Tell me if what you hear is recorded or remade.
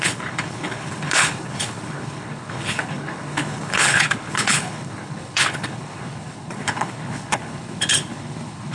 remade